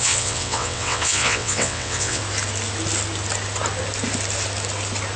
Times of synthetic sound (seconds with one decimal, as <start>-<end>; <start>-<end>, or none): 0.0-2.2

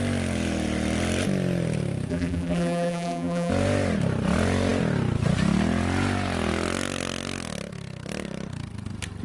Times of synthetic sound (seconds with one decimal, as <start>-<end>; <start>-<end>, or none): 2.1-3.5

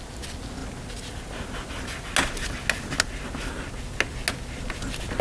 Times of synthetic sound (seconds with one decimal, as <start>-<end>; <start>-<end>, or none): none

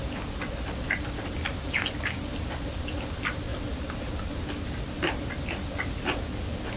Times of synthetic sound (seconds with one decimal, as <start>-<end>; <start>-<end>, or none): none